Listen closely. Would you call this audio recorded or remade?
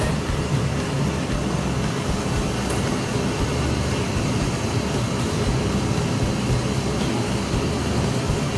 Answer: recorded